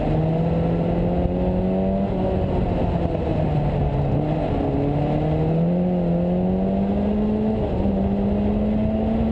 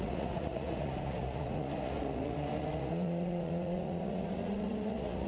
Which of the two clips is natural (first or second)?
first